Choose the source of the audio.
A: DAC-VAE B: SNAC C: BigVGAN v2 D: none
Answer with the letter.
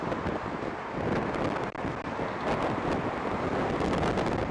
D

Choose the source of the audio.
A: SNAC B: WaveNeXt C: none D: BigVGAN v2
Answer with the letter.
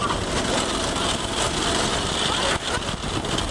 C